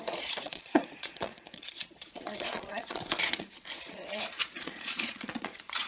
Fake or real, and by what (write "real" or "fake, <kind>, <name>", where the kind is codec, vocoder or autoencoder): fake, vocoder, Vocos